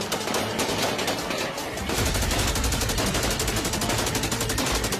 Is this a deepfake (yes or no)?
no